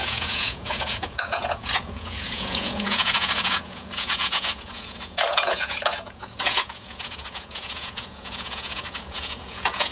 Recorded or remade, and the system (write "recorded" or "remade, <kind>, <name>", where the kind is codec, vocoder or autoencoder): remade, vocoder, Vocos